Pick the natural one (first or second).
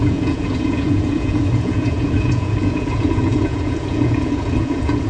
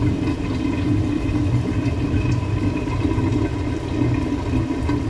second